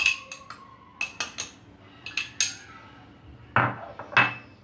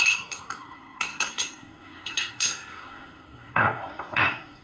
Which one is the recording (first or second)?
first